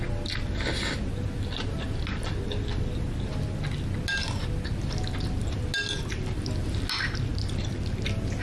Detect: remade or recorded recorded